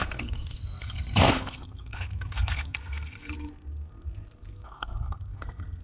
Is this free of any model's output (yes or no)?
no